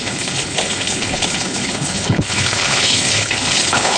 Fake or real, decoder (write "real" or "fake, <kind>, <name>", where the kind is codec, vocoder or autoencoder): fake, codec, HILCodec